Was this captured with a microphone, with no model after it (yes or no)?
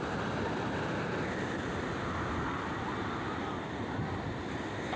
yes